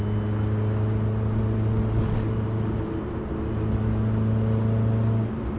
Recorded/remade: recorded